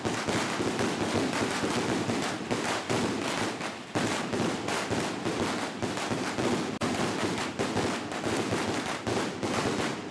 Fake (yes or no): yes